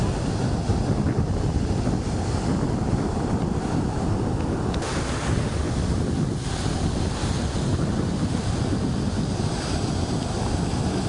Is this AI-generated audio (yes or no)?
no